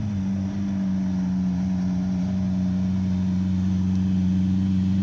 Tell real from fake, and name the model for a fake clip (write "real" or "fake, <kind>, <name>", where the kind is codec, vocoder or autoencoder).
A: real